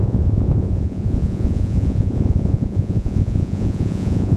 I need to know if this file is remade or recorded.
remade